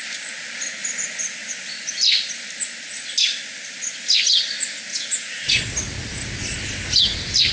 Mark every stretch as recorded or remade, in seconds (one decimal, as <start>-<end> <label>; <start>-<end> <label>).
0.0-4.9 recorded; 4.9-5.6 remade; 5.6-7.5 recorded